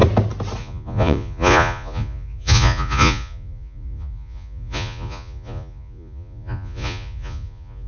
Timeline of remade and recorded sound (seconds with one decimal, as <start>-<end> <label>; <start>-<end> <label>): 0.0-0.6 recorded; 0.6-7.9 remade

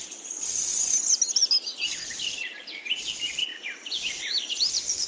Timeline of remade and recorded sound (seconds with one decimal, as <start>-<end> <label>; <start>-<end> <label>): 0.0-5.1 recorded

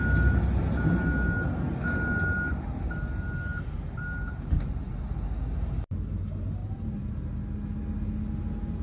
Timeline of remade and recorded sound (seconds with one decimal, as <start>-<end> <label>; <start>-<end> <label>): 0.0-6.6 recorded; 6.6-7.1 remade; 7.1-8.8 recorded

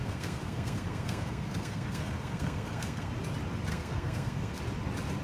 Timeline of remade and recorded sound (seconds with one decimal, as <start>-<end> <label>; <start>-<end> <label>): 0.0-3.1 remade; 3.1-3.7 recorded; 3.7-4.6 remade; 4.6-5.2 recorded